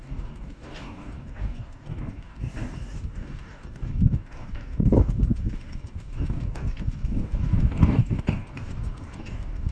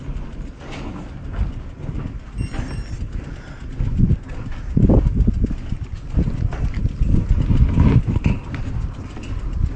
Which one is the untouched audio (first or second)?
second